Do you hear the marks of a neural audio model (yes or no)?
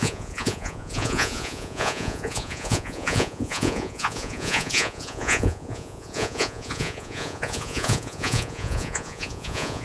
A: yes